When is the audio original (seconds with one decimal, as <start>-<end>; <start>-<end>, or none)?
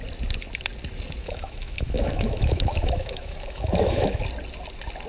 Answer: 0.0-1.2; 4.2-5.1